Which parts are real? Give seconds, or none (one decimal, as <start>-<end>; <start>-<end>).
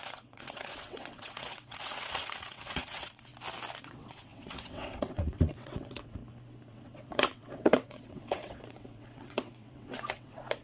3.3-3.8; 6.2-6.7